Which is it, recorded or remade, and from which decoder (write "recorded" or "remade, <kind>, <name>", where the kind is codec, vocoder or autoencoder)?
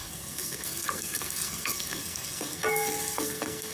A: remade, codec, SNAC